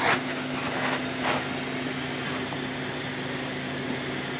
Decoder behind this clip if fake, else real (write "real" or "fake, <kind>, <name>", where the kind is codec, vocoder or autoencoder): real